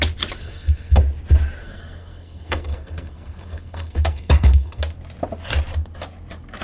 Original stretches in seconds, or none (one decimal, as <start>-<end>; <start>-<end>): 0.0-0.4; 1.0-1.6; 4.8-6.6